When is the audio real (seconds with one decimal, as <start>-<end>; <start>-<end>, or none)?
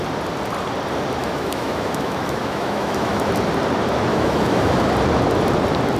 0.0-1.2; 3.3-4.1; 4.9-6.0